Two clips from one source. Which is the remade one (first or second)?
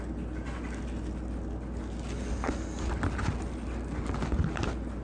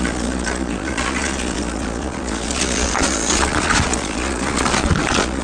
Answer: second